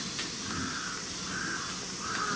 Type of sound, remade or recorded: recorded